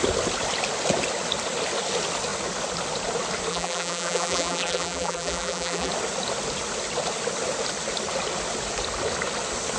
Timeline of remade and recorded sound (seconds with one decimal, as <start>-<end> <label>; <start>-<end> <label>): 0.0-3.5 recorded; 3.5-5.9 remade; 5.9-9.8 recorded